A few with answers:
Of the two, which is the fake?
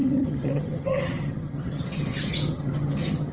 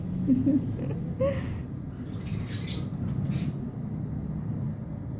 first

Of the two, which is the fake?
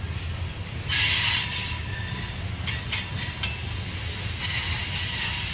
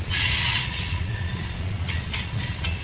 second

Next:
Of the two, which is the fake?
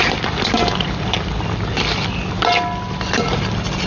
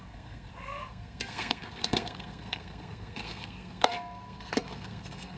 second